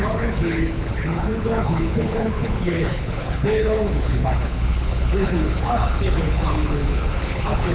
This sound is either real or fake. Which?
fake